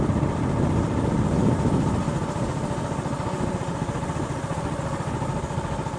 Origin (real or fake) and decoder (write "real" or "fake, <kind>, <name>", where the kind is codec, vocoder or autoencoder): real